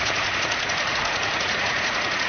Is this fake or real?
fake